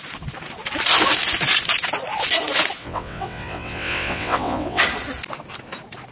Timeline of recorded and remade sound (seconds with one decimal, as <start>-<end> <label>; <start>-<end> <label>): 0.0-2.8 recorded; 2.8-4.8 remade; 4.8-6.1 recorded